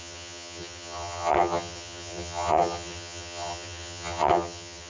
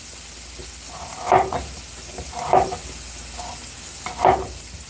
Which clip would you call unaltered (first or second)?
second